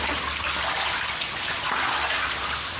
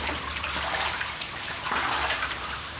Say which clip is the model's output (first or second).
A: second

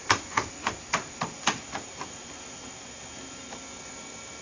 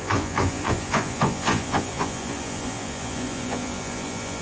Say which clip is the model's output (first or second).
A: second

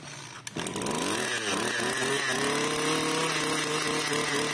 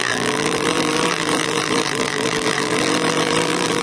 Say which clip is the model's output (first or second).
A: second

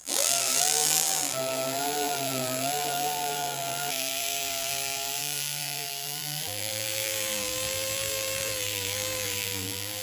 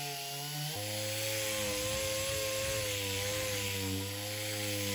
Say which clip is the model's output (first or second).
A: first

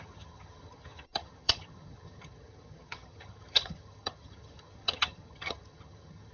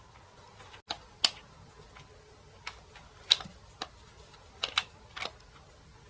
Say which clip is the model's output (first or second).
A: first